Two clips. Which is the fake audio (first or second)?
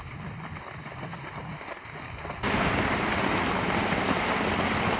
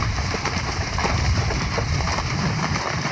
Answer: second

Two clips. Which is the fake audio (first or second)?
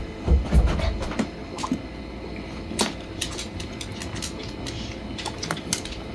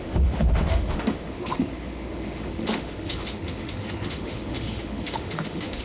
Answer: second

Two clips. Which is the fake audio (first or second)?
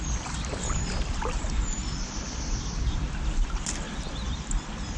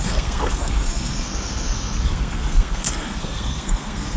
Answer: second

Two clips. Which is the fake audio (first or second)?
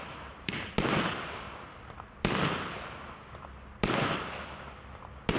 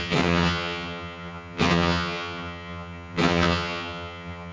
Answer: second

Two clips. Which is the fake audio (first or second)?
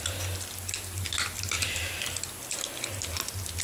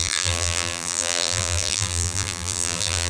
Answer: second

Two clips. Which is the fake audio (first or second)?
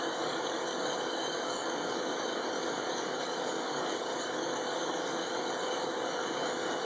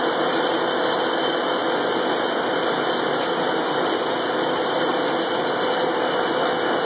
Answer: first